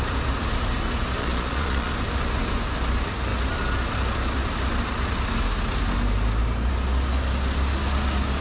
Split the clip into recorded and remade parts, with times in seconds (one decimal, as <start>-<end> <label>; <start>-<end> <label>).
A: 0.0-1.2 recorded; 1.2-1.9 remade; 1.9-8.4 recorded